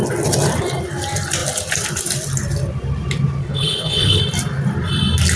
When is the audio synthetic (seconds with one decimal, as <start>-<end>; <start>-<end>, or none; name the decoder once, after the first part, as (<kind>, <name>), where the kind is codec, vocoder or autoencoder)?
3.4-4.2 (codec, HILCodec)